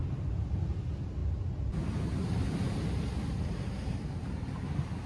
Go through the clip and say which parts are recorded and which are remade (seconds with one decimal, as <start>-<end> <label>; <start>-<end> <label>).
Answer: 0.0-5.1 recorded